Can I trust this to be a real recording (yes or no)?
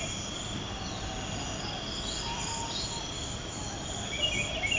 yes